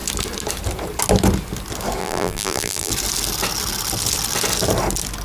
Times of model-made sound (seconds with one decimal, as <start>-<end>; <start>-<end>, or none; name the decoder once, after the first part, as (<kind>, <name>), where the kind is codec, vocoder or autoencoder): 2.0-2.9 (vocoder, BigVGAN v2)